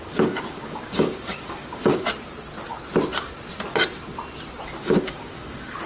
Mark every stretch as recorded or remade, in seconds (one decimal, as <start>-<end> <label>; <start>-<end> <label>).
0.0-1.9 remade; 1.9-4.8 recorded; 4.8-5.9 remade

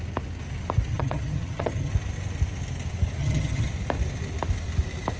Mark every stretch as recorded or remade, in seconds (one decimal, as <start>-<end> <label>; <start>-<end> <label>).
0.0-0.9 recorded; 0.9-1.9 remade; 1.9-3.2 recorded; 3.2-3.7 remade; 3.7-5.2 recorded

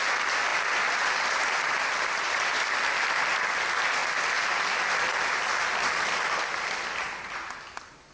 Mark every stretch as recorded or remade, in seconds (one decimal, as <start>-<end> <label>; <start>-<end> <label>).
0.0-8.1 recorded

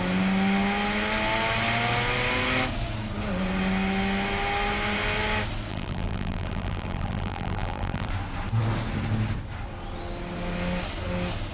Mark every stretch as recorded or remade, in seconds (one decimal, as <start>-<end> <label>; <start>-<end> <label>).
0.0-5.7 recorded; 5.7-8.1 remade; 8.1-11.5 recorded

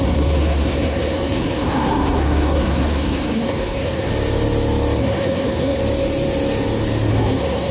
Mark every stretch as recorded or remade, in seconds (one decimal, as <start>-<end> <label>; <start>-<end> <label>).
0.0-4.1 remade; 4.1-5.0 recorded; 5.0-5.8 remade; 5.8-7.1 recorded; 7.1-7.7 remade

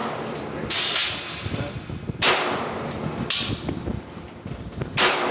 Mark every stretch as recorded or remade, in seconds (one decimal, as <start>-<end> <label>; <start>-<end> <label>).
0.0-5.3 recorded

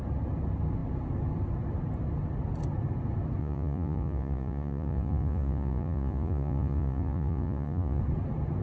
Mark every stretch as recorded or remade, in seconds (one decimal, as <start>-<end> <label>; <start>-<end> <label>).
0.0-3.4 recorded; 3.4-8.0 remade; 8.0-8.6 recorded